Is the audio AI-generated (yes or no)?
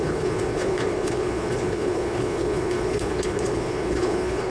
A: yes